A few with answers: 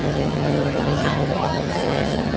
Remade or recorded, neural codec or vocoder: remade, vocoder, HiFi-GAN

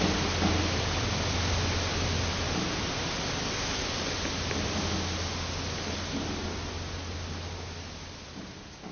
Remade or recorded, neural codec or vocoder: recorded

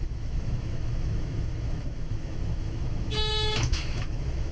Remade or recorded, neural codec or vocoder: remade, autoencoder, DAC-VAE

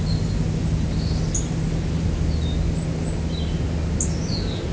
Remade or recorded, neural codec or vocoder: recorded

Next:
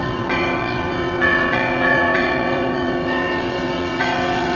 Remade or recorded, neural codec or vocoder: remade, vocoder, WaveNeXt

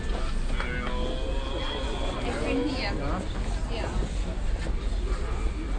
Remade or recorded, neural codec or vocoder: recorded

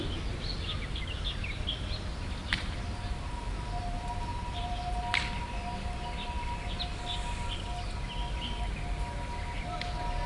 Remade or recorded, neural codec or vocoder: recorded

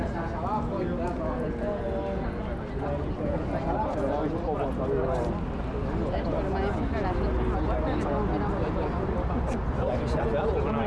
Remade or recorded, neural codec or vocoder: recorded